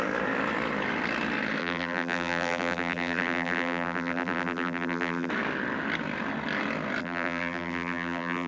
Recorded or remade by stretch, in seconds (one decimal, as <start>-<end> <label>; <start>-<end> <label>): 0.0-1.6 recorded; 1.6-5.3 remade; 5.3-7.0 recorded; 7.0-8.5 remade